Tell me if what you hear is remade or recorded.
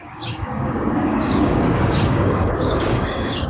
remade